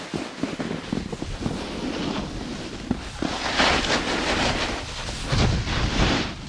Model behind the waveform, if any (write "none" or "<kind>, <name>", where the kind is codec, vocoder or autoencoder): none